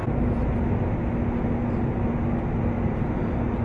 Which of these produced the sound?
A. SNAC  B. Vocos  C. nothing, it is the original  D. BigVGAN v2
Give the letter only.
C